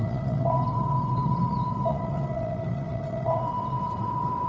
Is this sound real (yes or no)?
no